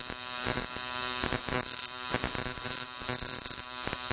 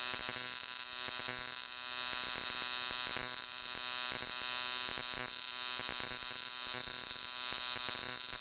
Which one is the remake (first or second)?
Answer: first